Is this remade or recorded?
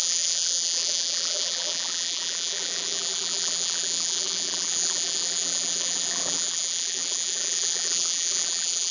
remade